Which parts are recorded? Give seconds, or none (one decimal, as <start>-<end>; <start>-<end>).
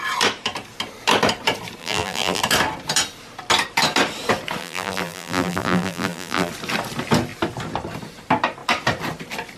0.0-1.8; 2.4-4.6; 6.5-9.6